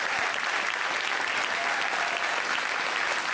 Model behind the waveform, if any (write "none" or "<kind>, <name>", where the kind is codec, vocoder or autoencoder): none